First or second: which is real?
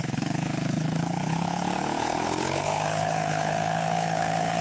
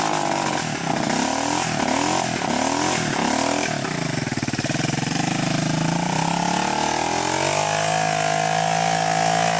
second